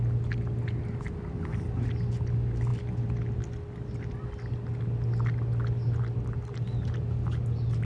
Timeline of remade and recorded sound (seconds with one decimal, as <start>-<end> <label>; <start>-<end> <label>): 0.0-7.8 recorded